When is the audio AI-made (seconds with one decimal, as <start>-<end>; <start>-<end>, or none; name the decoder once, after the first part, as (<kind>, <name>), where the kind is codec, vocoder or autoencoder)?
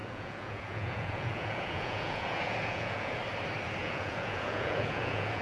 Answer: 0.0-3.2 (vocoder, Vocos); 3.8-5.4